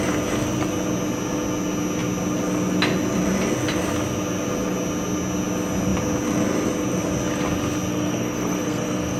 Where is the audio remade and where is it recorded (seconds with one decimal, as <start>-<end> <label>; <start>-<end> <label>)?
0.0-7.9 recorded; 7.9-9.2 remade